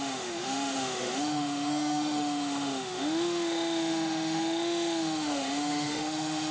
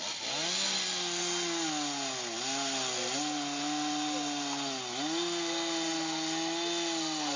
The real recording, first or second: second